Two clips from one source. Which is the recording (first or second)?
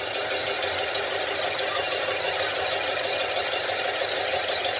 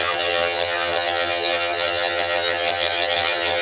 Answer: first